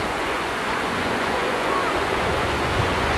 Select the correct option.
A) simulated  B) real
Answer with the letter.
A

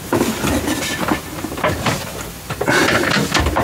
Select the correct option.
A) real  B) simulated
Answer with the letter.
A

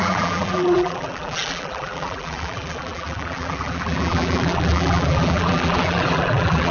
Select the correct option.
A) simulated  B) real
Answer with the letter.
A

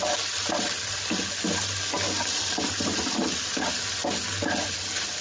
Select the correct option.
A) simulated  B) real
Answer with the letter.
B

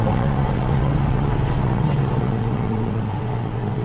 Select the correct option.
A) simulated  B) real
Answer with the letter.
A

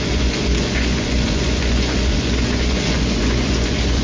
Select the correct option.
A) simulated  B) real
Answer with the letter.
A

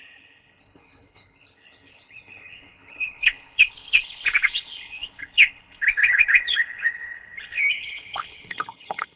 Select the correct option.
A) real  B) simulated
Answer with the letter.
B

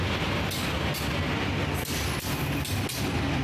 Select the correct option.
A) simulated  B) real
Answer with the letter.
B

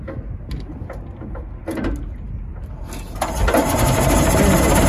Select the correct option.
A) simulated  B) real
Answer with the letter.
B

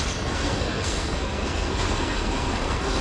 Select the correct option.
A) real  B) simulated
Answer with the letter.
B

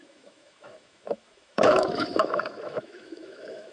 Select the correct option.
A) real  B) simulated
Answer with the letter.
B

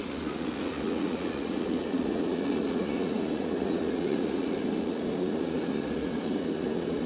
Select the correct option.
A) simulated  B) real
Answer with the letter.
A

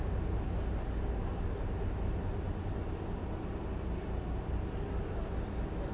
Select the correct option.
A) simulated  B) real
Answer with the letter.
B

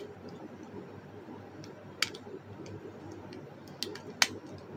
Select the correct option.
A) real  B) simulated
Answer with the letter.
A